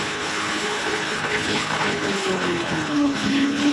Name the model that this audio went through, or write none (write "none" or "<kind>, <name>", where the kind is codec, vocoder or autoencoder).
codec, HILCodec